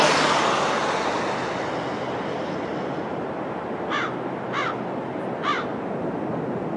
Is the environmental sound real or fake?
real